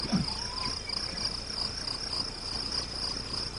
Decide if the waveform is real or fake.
real